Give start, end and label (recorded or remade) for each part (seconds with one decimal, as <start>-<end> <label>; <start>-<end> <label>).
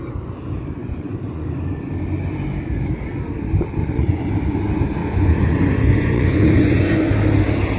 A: 0.0-0.8 recorded; 0.8-1.6 remade; 1.6-3.8 recorded; 3.8-4.3 remade; 4.3-5.0 recorded; 5.0-7.1 remade; 7.1-7.8 recorded